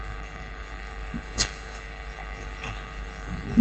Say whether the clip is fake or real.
fake